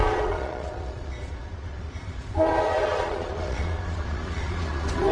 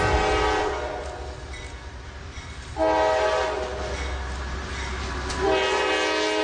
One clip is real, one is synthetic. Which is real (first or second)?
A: second